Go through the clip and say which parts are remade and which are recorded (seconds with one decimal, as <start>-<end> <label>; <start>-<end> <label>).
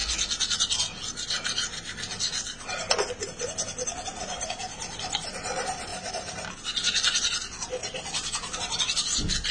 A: 0.0-5.9 recorded; 5.9-6.5 remade; 6.5-7.8 recorded; 7.8-8.8 remade; 8.8-9.5 recorded